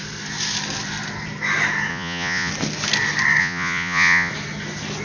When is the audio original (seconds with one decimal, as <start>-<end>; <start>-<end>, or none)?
0.0-1.9; 2.5-3.4; 4.3-5.0